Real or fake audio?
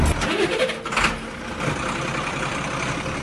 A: real